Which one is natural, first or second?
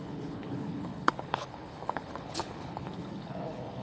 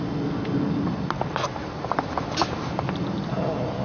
second